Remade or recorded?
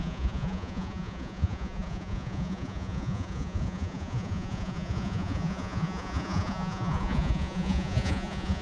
remade